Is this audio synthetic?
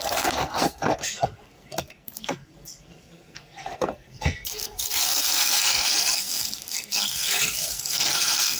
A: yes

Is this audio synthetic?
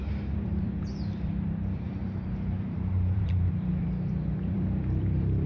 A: yes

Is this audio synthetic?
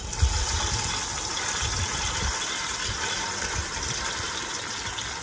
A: no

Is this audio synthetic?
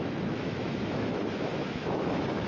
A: yes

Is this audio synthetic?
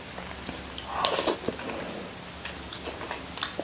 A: no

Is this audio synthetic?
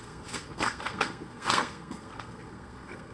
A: yes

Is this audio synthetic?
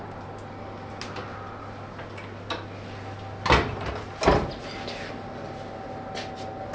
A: no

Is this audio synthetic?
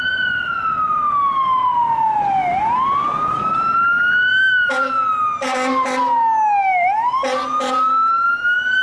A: no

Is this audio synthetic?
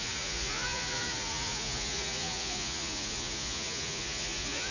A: yes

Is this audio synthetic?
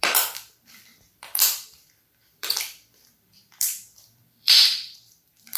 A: yes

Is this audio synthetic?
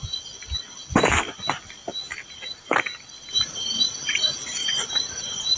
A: no